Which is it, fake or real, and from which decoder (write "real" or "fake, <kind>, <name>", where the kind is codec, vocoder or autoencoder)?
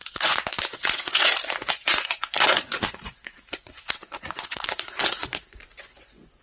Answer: fake, vocoder, Vocos